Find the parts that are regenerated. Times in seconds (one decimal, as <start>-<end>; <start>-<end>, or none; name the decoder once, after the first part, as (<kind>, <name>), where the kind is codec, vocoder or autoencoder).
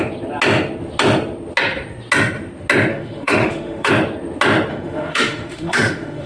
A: 2.9-3.9 (autoencoder, DAC-VAE); 4.7-6.3